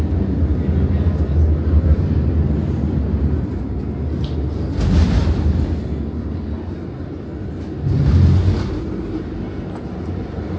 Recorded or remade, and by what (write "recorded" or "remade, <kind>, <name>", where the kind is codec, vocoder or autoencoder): recorded